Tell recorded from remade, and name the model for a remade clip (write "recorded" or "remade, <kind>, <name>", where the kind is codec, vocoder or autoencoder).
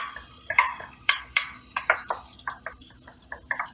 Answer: remade, vocoder, BigVGAN v2